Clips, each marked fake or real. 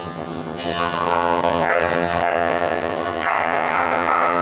fake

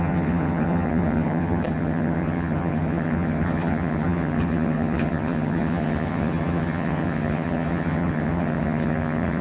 fake